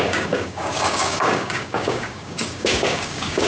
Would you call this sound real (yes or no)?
no